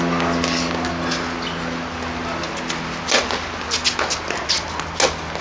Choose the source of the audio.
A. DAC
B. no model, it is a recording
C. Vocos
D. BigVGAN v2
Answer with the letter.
B